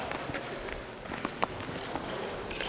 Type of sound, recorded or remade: recorded